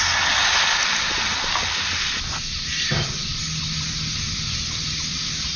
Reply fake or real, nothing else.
real